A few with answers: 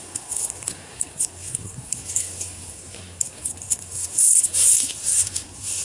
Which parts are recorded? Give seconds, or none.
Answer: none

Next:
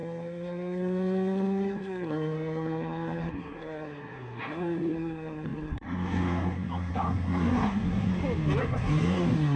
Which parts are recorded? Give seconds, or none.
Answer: 8.1-8.6

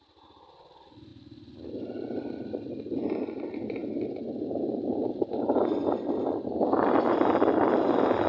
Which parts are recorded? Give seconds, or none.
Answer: 0.0-8.3

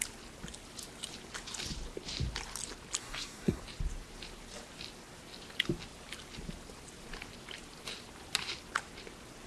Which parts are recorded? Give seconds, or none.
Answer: 0.0-3.0; 3.6-9.5

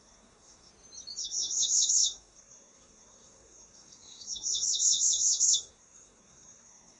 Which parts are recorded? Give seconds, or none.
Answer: 0.7-1.2